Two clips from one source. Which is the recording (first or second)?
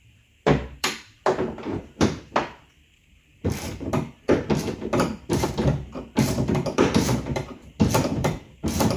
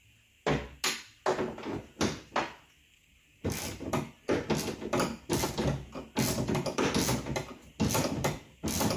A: second